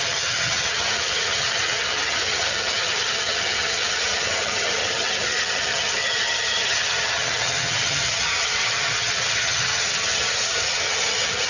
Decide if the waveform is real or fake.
fake